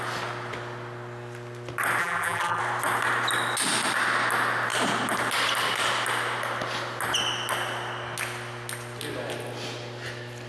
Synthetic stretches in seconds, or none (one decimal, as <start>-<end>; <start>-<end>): 2.0-2.6